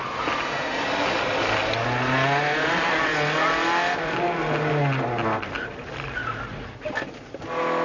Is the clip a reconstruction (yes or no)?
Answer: no